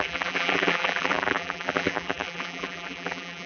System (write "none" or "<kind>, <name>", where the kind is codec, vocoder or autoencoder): vocoder, BigVGAN v2